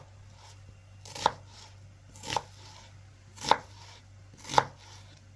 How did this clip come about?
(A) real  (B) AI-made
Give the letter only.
A